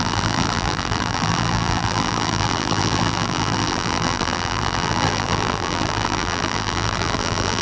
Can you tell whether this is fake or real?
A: fake